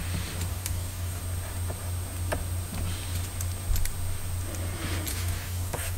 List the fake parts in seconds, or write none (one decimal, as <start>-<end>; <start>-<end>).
0.5-1.2; 5.1-6.0